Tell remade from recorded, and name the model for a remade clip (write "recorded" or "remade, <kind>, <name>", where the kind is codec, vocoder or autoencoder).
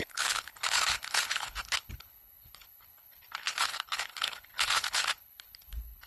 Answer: remade, codec, HILCodec